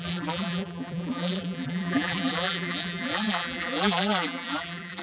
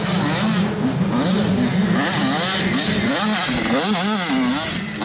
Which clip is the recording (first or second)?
second